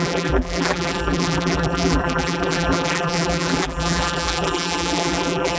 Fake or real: fake